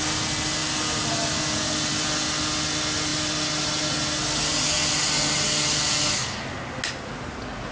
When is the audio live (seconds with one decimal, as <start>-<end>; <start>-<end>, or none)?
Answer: 0.0-7.7